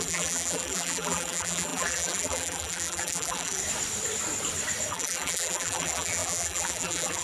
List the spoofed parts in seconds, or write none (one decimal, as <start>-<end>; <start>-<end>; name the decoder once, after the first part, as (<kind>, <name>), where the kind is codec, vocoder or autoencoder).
0.0-3.6 (vocoder, BigVGAN v2); 4.9-7.2